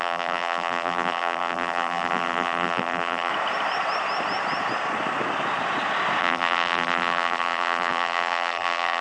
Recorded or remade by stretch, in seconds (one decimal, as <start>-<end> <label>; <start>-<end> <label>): 0.0-3.3 remade; 3.3-6.2 recorded; 6.2-9.0 remade